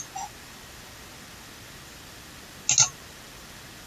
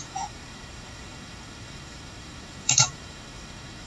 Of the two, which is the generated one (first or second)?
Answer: second